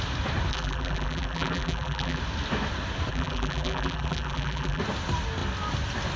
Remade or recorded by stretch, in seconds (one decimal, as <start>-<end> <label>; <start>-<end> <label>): 0.0-0.5 recorded; 0.5-2.2 remade; 2.2-3.1 recorded; 3.1-4.8 remade; 4.8-6.2 recorded